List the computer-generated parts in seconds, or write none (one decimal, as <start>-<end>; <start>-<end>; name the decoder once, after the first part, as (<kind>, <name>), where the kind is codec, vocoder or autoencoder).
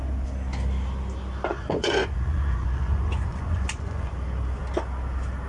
1.5-4.1 (vocoder, Vocos)